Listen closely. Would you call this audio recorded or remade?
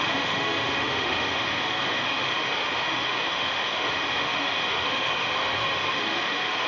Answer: remade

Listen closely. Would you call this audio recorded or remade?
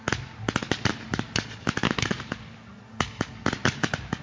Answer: recorded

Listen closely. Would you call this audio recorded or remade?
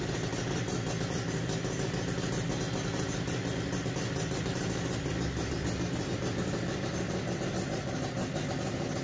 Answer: recorded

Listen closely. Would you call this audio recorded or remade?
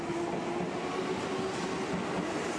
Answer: recorded